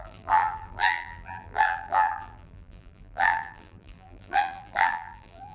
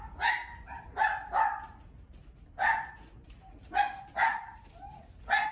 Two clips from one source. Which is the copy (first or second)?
first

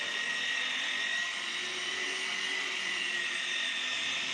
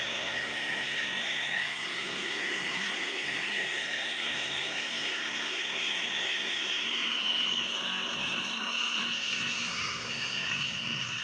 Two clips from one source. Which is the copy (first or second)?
second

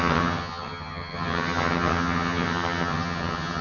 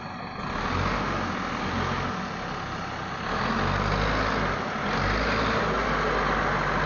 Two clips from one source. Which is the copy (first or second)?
first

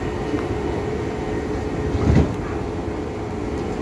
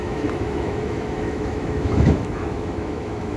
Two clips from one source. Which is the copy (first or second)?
second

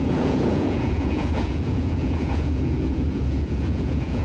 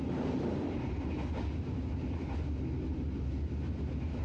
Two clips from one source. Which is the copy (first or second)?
first